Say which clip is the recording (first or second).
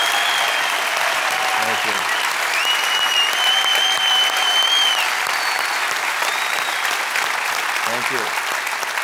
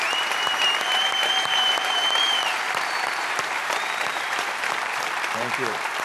first